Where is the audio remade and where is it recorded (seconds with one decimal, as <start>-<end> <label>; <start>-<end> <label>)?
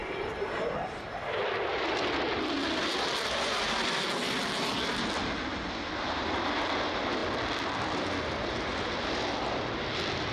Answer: 0.0-10.3 recorded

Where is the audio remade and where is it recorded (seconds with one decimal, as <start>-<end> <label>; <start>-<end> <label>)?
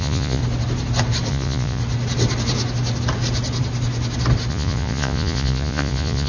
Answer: 0.0-0.4 remade; 0.4-1.3 recorded; 1.3-1.8 remade; 1.8-4.5 recorded; 4.5-6.3 remade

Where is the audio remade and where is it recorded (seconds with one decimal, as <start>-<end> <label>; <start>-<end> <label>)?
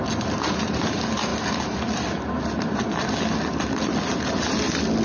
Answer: 0.0-5.0 recorded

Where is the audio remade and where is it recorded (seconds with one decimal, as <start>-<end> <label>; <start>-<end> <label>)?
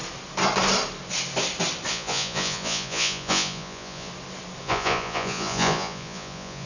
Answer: 0.0-1.9 recorded; 1.9-4.1 remade; 4.1-4.6 recorded; 4.6-6.7 remade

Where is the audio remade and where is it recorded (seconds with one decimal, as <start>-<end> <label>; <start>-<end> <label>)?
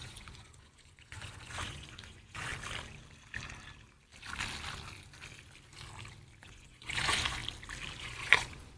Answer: 0.0-2.5 remade; 2.5-6.4 recorded; 6.4-7.4 remade; 7.4-8.0 recorded; 8.0-8.8 remade